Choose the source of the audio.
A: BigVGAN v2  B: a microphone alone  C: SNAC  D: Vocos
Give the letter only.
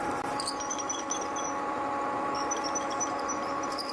B